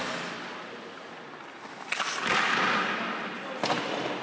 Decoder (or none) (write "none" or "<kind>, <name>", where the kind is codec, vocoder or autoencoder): none